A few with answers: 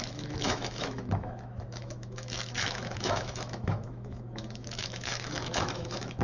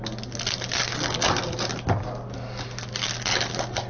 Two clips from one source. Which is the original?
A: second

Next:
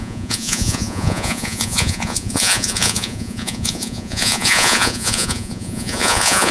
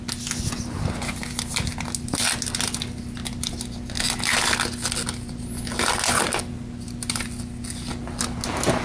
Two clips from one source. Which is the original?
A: second